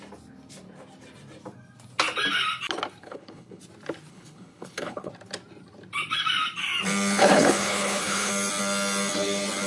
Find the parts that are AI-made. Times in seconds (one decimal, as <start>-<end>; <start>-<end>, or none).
3.0-3.6; 4.1-5.1; 7.2-8.3

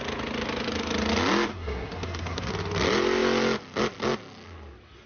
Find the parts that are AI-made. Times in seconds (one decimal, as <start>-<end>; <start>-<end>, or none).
1.5-2.5

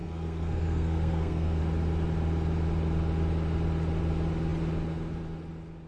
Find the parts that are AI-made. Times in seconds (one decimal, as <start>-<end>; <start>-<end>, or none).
0.0-1.6

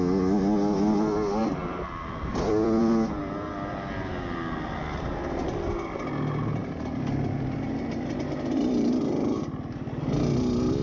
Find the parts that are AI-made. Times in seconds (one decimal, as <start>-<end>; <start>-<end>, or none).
1.4-2.8; 6.6-10.0

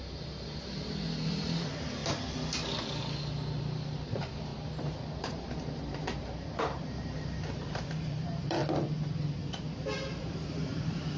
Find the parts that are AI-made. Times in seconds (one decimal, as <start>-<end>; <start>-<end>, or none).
0.0-2.0; 3.6-4.5; 5.2-8.6; 10.2-11.2